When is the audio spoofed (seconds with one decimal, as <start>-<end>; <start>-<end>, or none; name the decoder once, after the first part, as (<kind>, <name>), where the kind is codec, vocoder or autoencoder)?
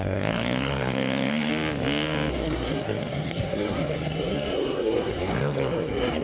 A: 0.0-1.5 (codec, SNAC); 2.3-6.2